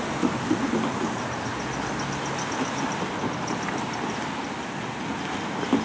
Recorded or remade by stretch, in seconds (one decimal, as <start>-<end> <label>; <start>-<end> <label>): 0.0-5.8 recorded